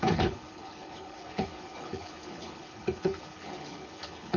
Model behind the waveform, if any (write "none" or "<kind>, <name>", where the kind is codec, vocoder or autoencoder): codec, HILCodec